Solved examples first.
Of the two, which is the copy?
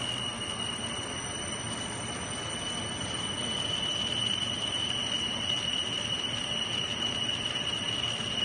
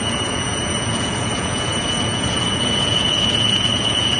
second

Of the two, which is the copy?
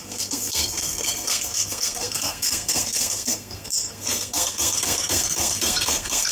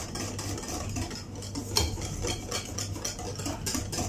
first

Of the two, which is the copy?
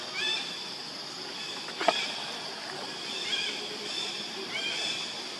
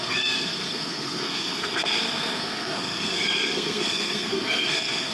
second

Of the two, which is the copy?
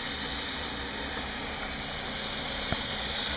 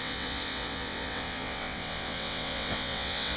second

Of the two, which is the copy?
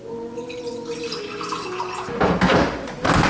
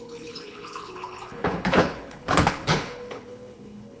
second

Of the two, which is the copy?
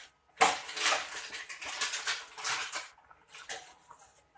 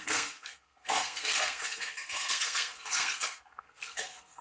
second